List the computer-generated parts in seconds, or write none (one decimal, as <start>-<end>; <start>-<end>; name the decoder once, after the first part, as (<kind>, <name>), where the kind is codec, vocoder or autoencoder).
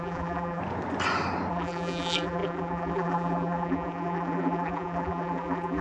0.0-0.6 (vocoder, BigVGAN v2); 1.5-5.8